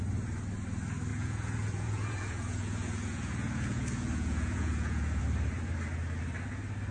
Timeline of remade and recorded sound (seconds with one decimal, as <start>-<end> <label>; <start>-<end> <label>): 0.0-1.1 recorded; 1.1-5.2 remade; 5.2-6.9 recorded

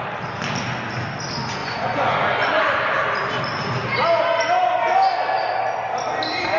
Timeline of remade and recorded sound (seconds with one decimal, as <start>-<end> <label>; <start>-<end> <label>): 0.0-1.6 recorded; 1.6-2.6 remade; 2.6-6.6 recorded

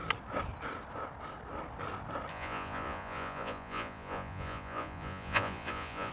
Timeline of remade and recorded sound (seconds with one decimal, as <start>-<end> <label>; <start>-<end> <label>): 0.0-2.3 recorded; 2.3-6.1 remade

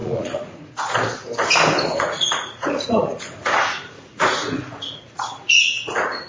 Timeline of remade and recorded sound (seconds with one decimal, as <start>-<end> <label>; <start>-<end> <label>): 0.0-0.7 remade; 0.7-1.9 recorded; 1.9-5.7 remade; 5.7-6.3 recorded